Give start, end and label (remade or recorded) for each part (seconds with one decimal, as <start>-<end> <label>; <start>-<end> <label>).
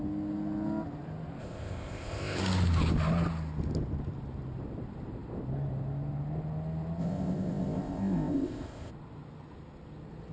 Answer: 0.0-1.4 recorded; 1.4-2.4 remade; 2.4-7.0 recorded; 7.0-8.9 remade; 8.9-10.3 recorded